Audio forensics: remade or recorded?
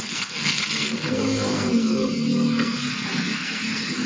remade